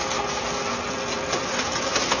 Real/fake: real